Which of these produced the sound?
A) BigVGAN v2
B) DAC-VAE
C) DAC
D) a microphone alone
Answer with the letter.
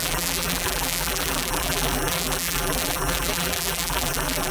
A